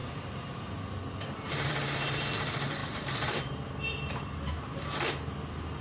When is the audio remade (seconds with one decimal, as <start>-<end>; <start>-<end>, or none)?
0.0-1.7; 2.8-4.5

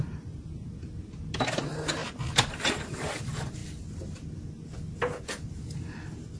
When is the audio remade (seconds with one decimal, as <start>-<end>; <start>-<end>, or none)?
none

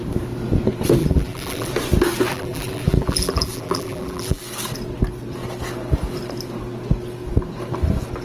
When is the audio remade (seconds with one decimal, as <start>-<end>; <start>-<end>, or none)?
1.0-1.7; 2.3-4.4

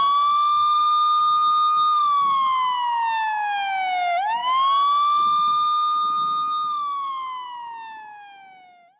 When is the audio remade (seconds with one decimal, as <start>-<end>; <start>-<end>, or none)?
none

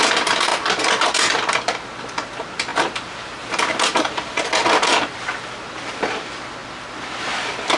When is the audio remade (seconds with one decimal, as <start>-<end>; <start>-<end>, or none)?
0.0-7.8

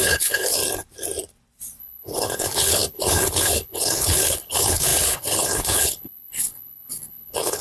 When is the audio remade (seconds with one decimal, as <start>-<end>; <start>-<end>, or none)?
0.0-0.6; 1.8-7.6

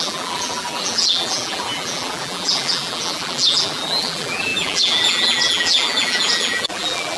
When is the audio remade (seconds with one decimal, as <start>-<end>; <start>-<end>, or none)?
0.0-7.2

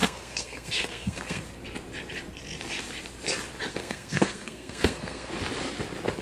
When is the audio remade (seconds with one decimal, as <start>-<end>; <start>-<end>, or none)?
0.0-1.4; 3.7-5.3